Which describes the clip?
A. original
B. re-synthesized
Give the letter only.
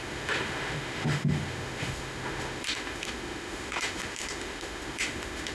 B